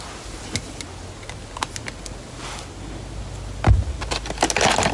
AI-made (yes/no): no